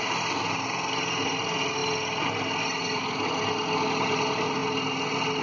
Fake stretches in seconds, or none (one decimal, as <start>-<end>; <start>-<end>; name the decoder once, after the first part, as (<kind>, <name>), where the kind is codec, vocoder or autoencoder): none